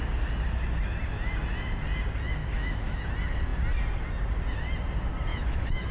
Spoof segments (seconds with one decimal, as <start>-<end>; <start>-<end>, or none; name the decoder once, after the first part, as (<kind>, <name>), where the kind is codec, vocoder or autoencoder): 2.4-3.0 (autoencoder, DAC-VAE); 5.3-5.9